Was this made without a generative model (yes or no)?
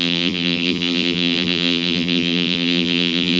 no